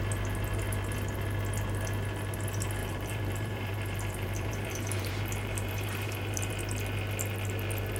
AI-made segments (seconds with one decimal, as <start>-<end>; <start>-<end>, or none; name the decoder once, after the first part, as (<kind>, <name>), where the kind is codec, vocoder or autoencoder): 2.8-6.5 (vocoder, BigVGAN v2)